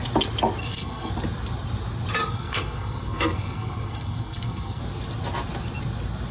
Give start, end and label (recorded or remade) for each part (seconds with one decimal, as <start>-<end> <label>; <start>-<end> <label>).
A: 0.0-0.6 recorded; 0.6-1.1 remade; 1.1-2.2 recorded; 2.2-4.8 remade; 4.8-6.3 recorded

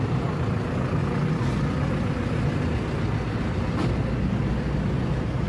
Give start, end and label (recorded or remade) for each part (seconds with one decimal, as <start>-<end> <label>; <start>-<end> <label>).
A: 0.0-5.5 recorded

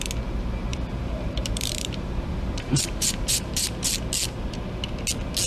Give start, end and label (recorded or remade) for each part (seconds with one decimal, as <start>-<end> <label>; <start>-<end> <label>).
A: 0.0-0.7 recorded; 0.7-4.0 remade; 4.0-5.5 recorded

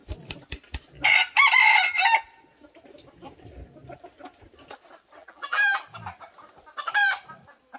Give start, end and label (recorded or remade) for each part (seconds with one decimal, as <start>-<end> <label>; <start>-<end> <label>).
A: 0.0-5.2 recorded; 5.2-5.8 remade; 5.8-7.8 recorded

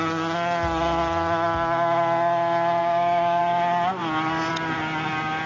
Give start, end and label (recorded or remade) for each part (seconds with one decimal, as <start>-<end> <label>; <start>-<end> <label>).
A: 0.0-2.8 recorded; 2.8-3.4 remade; 3.4-5.5 recorded

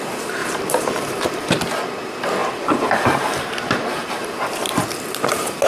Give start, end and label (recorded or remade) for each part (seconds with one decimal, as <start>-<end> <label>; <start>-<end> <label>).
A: 0.0-0.4 recorded; 0.4-1.5 remade; 1.5-2.4 recorded; 2.4-4.8 remade; 4.8-5.7 recorded